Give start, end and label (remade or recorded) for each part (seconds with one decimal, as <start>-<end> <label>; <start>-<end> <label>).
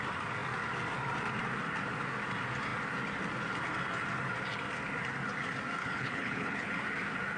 0.0-5.8 recorded; 5.8-6.7 remade; 6.7-7.4 recorded